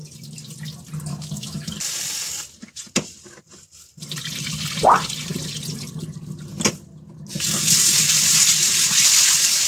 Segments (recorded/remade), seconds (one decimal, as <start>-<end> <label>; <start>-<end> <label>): 0.0-1.1 recorded; 1.1-1.7 remade; 1.7-9.7 recorded